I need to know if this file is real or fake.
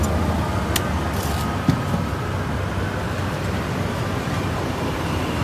real